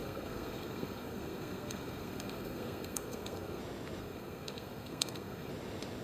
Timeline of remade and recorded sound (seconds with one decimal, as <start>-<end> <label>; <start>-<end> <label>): 0.0-3.6 remade; 3.6-4.0 recorded; 4.0-5.5 remade; 5.5-6.0 recorded